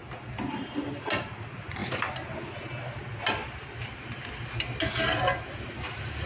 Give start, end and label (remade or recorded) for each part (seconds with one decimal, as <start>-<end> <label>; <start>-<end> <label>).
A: 0.0-6.3 recorded